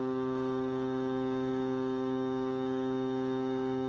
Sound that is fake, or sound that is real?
fake